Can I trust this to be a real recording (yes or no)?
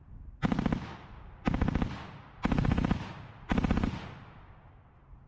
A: yes